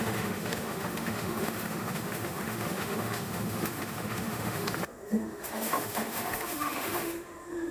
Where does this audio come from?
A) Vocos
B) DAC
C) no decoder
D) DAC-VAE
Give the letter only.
D